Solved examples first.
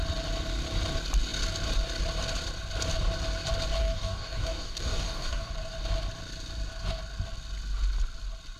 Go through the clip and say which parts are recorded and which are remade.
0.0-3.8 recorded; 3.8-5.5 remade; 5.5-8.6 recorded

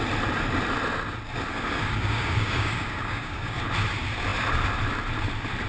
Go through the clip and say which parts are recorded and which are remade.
0.0-1.5 recorded; 1.5-3.6 remade; 3.6-5.7 recorded

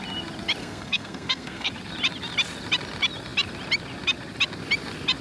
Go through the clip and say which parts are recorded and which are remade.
0.0-0.6 recorded; 0.6-1.7 remade; 1.7-5.2 recorded